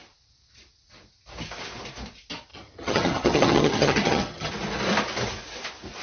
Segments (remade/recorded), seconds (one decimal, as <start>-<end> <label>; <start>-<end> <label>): 0.0-2.5 recorded; 2.5-4.5 remade; 4.5-6.0 recorded